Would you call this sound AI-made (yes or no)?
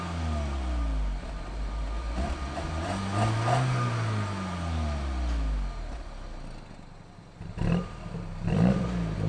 no